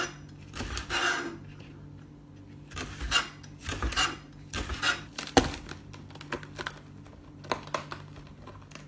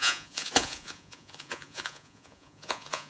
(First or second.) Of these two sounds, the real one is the first